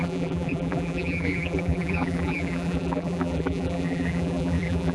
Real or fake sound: fake